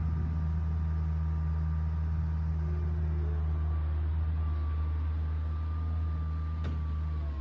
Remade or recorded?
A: recorded